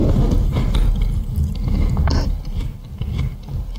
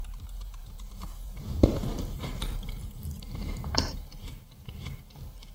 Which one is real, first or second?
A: first